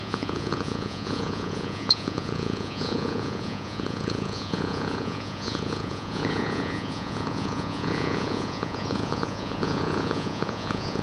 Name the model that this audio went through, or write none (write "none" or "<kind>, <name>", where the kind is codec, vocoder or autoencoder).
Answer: vocoder, Vocos